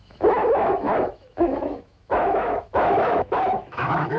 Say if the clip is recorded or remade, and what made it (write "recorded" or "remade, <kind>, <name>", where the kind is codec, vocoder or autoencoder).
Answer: remade, autoencoder, DAC-VAE